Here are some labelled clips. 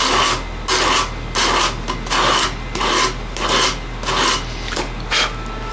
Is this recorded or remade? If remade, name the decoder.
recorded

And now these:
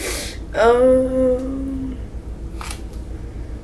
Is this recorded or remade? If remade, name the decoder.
recorded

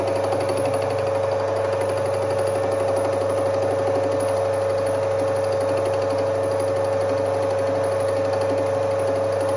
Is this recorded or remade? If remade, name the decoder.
recorded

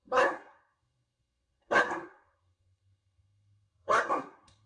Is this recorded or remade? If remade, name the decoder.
remade, codec, SNAC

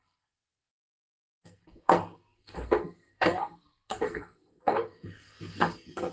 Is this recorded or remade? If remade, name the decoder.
remade, codec, SNAC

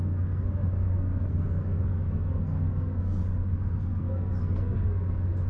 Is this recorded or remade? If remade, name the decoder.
remade, codec, SNAC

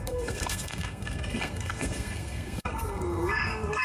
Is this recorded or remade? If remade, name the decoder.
remade, codec, SNAC